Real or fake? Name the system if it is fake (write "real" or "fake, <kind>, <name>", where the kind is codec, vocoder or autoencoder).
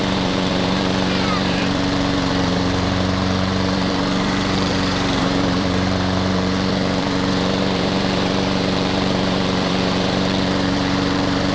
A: fake, vocoder, BigVGAN v2